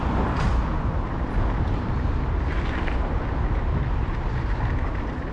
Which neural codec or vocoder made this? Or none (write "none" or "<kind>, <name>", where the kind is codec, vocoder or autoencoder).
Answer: none